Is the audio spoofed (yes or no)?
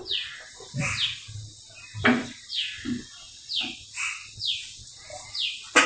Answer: yes